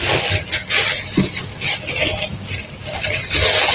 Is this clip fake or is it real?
real